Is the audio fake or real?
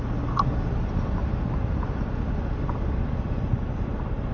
real